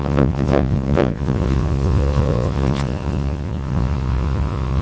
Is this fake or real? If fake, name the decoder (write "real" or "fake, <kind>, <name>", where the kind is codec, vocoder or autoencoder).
fake, vocoder, Vocos